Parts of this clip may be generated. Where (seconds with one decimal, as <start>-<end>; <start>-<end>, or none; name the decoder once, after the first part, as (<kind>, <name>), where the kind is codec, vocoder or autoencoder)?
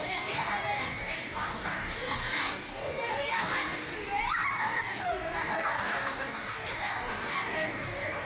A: 0.0-3.9 (codec, DAC); 4.5-8.3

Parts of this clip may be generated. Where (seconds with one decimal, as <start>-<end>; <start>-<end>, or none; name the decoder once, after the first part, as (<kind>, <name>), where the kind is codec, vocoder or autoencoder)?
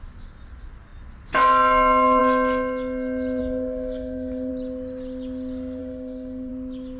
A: 3.4-4.5 (codec, DAC); 5.8-6.5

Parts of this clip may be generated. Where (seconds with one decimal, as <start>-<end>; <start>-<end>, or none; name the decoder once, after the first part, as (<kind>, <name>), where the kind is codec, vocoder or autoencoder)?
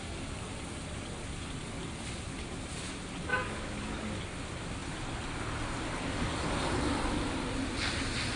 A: 3.3-4.2 (codec, DAC)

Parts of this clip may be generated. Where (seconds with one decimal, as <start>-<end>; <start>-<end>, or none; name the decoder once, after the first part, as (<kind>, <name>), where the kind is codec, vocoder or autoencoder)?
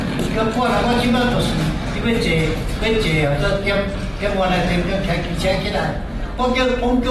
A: none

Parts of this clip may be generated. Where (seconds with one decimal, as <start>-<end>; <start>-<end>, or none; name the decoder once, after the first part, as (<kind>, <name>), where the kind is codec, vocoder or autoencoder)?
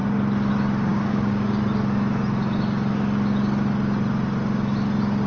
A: 0.9-1.6 (codec, DAC)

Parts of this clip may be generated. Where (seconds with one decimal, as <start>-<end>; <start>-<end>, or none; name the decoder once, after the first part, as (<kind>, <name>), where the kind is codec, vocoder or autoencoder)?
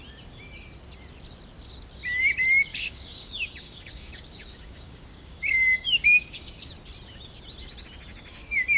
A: 2.7-6.7 (codec, DAC)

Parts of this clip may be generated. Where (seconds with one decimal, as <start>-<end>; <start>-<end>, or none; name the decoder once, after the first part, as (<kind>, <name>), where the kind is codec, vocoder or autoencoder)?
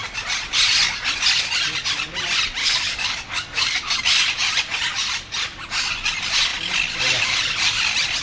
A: 2.6-4.0 (codec, DAC)